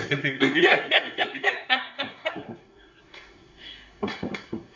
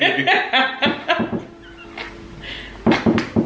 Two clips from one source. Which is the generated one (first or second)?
first